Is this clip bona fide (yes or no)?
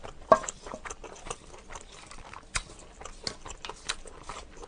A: yes